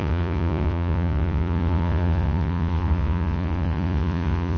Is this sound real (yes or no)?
no